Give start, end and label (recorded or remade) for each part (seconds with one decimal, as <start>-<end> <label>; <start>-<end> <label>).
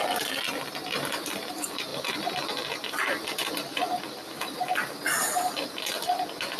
0.0-6.6 remade